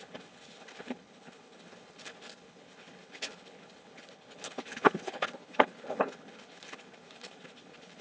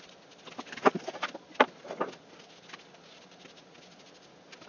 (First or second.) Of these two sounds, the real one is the second